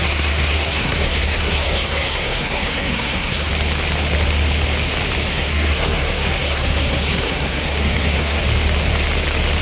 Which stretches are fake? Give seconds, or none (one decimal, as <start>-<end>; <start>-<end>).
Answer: 0.0-3.5; 5.3-8.4